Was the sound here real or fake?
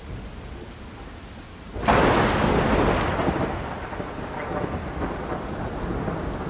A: real